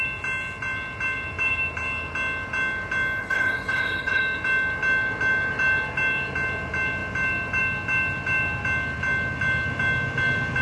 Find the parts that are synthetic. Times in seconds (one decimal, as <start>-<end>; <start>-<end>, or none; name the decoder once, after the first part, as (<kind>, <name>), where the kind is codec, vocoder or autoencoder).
3.2-4.2 (codec, HILCodec)